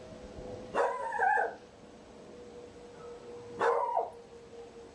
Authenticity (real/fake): real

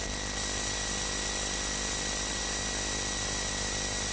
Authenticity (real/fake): real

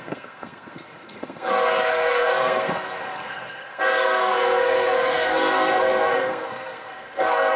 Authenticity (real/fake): fake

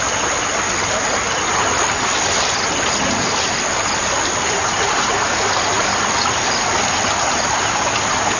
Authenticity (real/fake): real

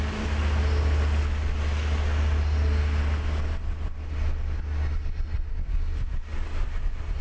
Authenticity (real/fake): real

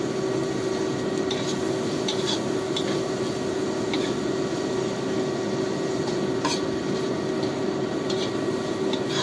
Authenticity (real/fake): real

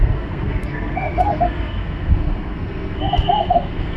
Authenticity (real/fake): fake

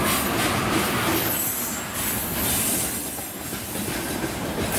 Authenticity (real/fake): real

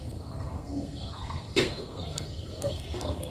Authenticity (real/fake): fake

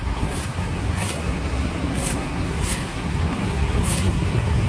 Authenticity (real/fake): fake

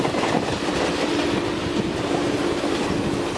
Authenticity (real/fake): real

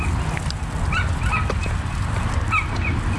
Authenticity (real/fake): real